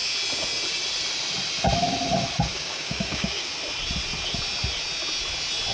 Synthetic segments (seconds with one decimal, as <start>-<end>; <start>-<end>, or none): 2.5-3.5